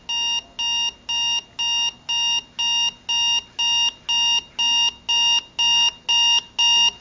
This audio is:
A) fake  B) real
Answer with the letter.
B